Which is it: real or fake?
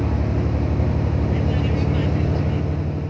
real